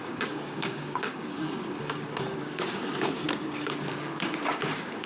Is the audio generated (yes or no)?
yes